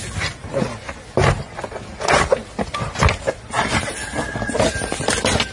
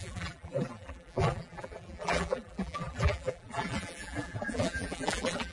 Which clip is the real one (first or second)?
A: first